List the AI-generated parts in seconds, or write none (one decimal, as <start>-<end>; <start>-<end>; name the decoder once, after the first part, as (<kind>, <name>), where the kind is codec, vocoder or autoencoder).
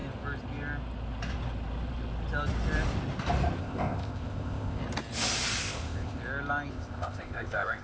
3.6-4.8 (codec, ZipCodec); 5.6-6.2; 6.7-7.8